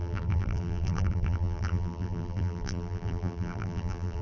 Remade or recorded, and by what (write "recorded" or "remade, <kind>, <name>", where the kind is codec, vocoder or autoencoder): remade, vocoder, BigVGAN v2